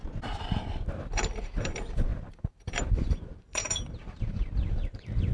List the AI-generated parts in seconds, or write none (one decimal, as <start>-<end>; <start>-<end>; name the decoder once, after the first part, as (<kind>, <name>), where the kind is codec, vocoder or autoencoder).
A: 1.1-5.3 (vocoder, BigVGAN v2)

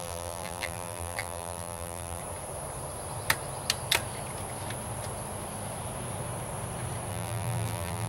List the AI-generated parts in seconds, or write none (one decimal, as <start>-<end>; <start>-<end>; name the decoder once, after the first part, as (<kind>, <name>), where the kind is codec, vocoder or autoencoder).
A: 0.0-2.2 (vocoder, BigVGAN v2); 7.1-8.1